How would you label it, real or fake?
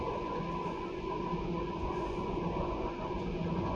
fake